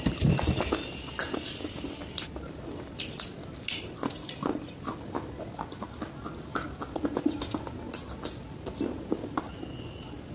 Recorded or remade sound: recorded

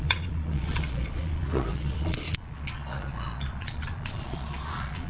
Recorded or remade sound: remade